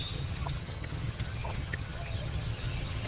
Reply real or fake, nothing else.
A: fake